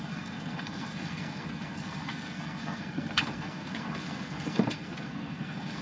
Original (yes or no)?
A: no